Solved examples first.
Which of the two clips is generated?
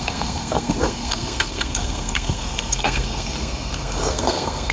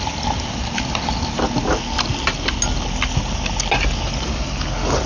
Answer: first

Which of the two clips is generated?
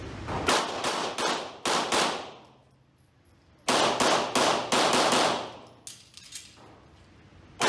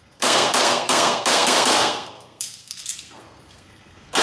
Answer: second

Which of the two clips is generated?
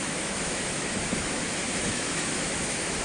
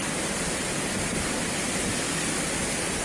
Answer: first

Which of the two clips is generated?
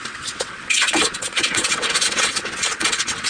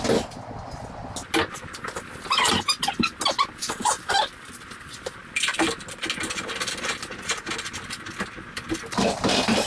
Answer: first